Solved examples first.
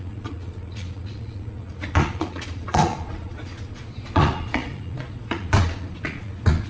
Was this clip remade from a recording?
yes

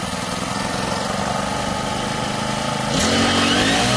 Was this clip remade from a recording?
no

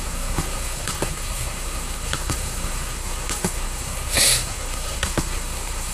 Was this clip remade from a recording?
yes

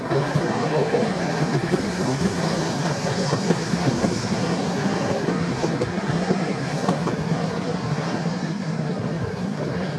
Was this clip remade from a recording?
yes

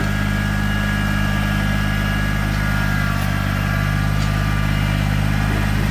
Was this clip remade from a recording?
no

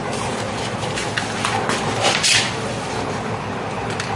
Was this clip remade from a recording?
no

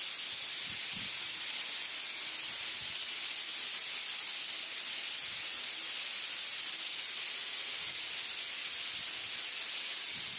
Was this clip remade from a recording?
no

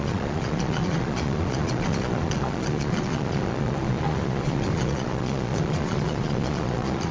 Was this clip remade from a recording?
yes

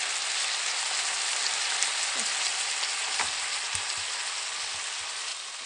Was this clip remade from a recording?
no